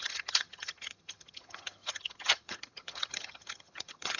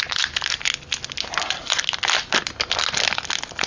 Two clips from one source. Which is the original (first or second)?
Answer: second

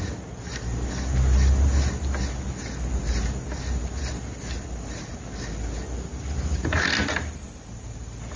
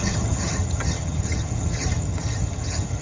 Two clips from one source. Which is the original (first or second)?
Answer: first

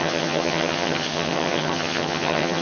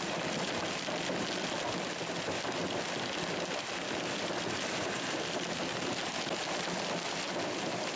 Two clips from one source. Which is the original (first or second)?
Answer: second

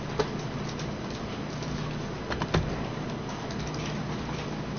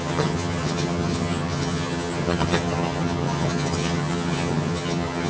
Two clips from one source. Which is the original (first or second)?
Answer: first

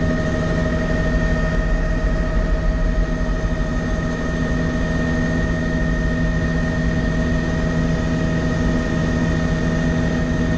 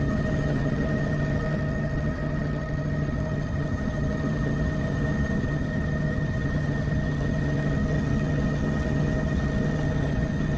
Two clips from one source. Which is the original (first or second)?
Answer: first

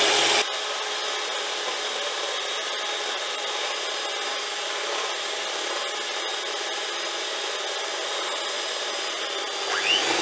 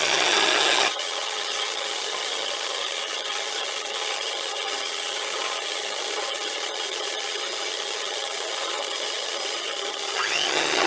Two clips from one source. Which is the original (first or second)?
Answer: first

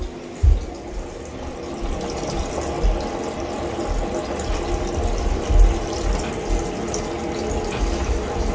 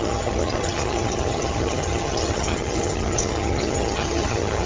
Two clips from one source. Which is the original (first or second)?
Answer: first